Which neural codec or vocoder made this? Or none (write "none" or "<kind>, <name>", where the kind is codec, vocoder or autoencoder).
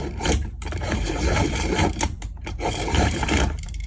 vocoder, BigVGAN v2